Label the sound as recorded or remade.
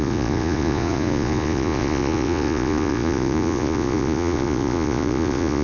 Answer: remade